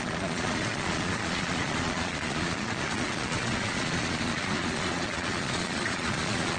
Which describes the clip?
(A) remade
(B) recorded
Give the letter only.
A